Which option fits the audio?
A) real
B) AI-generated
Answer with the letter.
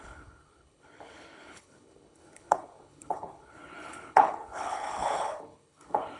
B